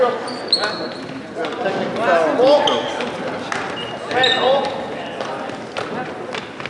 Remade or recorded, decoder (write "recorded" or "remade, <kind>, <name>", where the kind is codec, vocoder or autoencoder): recorded